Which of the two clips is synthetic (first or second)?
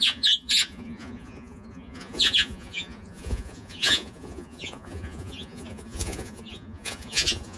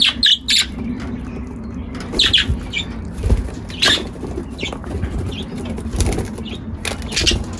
first